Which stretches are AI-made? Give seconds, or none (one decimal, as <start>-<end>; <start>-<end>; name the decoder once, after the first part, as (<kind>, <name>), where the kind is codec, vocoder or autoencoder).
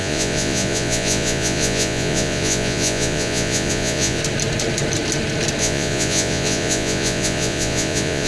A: 0.0-4.2 (vocoder, Vocos); 5.6-8.3